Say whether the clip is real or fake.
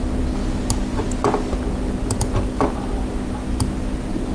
real